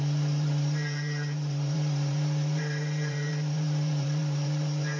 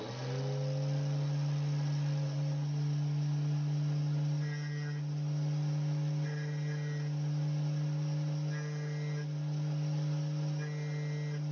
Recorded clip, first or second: second